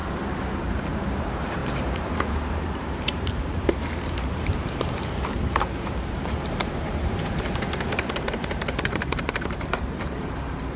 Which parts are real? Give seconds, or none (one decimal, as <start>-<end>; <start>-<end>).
0.0-0.6